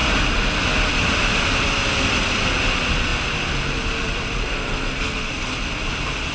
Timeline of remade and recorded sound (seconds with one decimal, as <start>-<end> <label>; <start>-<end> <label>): 0.0-4.4 recorded; 4.4-5.3 remade; 5.3-6.3 recorded